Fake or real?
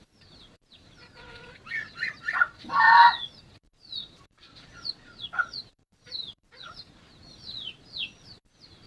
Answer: fake